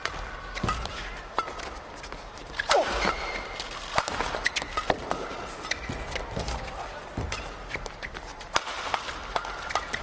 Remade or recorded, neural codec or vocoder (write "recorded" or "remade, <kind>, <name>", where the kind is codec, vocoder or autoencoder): recorded